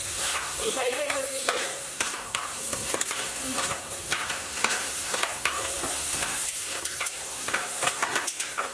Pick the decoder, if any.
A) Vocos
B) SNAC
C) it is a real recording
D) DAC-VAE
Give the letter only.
B